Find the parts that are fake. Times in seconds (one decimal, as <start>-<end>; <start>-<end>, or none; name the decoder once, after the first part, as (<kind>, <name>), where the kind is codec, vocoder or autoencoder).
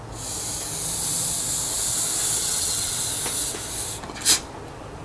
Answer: 2.4-3.0 (vocoder, WaveNeXt)